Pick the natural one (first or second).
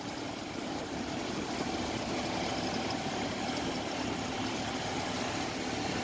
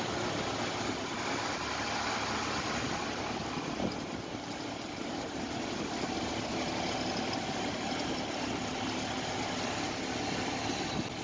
second